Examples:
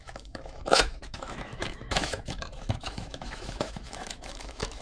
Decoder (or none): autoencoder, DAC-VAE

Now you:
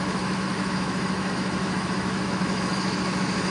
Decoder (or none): autoencoder, DAC-VAE